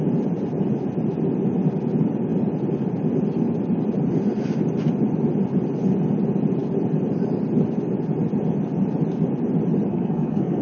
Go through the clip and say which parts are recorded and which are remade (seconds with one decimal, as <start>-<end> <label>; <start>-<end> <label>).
0.0-9.9 recorded; 9.9-10.6 remade